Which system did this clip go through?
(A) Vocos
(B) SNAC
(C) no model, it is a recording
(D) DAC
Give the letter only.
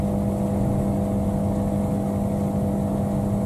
C